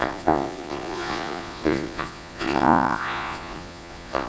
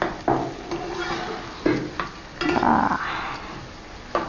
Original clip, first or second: second